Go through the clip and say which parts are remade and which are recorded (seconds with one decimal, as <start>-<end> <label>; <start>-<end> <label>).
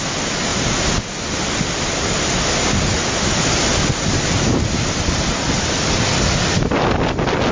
0.0-7.5 recorded